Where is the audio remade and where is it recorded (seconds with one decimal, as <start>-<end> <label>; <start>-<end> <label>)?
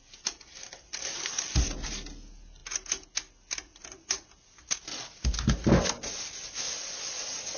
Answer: 0.0-7.6 recorded